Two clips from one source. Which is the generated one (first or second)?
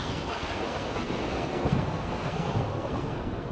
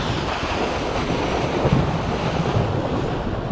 first